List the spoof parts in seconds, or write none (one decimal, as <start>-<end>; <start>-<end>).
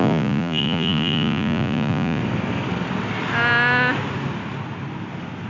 0.0-2.2